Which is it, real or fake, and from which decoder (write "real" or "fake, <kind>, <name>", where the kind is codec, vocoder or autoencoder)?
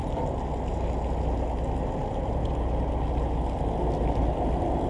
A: real